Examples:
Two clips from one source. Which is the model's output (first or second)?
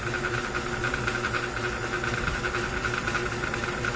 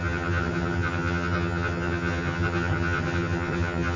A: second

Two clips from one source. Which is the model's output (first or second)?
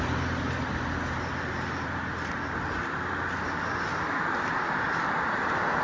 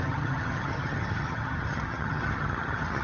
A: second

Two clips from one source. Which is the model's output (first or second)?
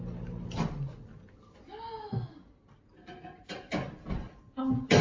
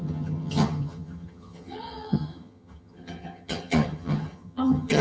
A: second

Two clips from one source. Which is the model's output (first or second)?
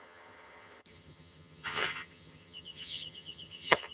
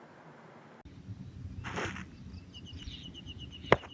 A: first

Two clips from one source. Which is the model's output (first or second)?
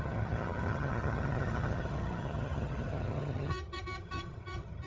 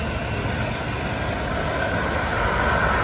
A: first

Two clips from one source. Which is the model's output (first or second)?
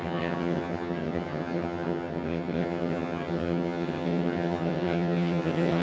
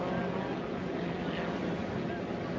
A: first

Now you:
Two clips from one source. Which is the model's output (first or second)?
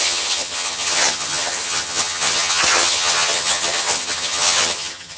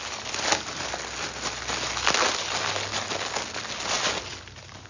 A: first